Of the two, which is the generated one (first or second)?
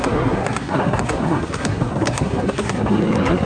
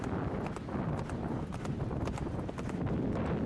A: first